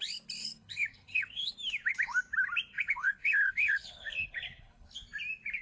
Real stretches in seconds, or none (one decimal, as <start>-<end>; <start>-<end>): 0.0-0.4; 1.5-2.7; 4.9-5.6